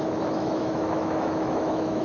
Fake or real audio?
fake